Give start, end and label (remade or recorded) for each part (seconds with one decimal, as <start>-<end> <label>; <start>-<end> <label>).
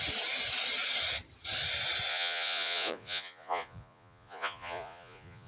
0.0-2.1 recorded; 2.1-5.5 remade